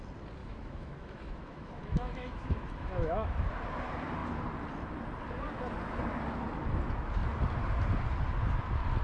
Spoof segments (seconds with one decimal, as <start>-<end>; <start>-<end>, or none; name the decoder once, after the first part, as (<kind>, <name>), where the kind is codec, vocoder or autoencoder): 0.4-3.5 (autoencoder, DAC-VAE)